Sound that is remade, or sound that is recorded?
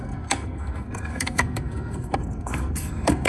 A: remade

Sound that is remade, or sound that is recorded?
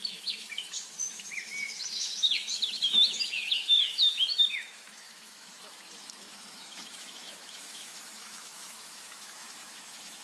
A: remade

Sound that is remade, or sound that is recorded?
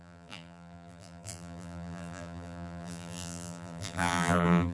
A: remade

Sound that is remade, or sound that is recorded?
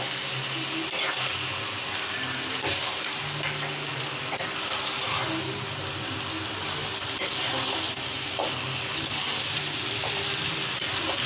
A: recorded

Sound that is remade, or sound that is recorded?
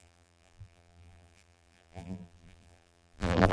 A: remade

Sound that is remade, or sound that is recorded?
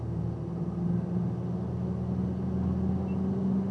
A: recorded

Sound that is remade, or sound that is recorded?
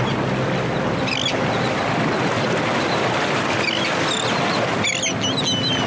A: recorded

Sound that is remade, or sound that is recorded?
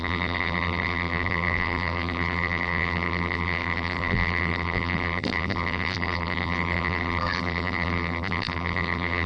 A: remade